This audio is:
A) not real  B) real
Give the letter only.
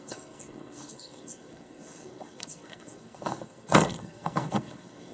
A